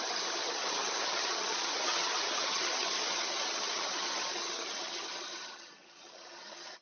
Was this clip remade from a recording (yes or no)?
yes